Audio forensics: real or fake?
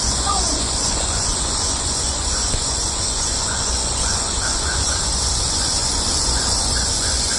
fake